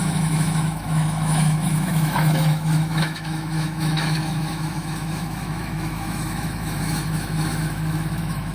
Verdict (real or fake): fake